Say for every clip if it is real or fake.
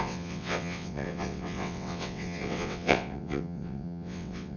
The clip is fake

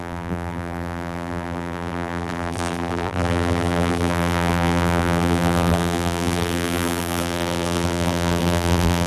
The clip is fake